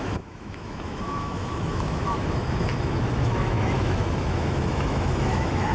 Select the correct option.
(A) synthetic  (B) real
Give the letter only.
A